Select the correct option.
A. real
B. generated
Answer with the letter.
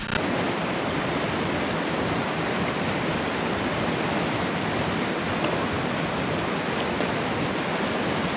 A